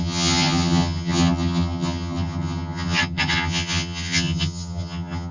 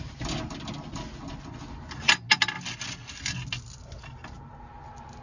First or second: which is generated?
first